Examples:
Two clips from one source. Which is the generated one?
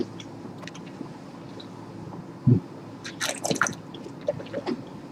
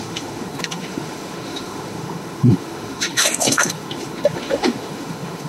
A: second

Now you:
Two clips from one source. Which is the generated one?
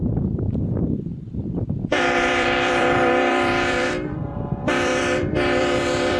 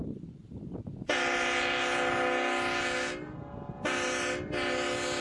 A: first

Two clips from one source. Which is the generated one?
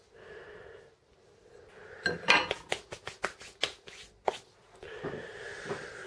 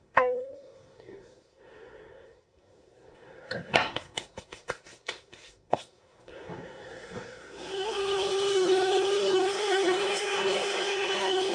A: second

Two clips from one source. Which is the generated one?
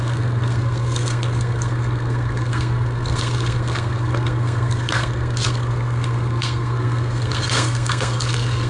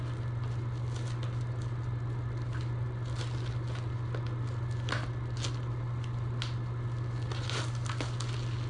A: first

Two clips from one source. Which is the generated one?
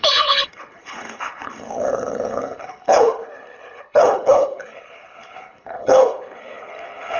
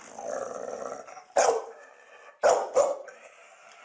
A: first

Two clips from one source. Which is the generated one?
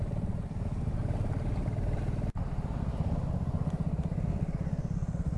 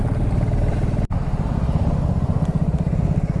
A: first